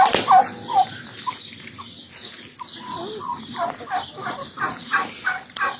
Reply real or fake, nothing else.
real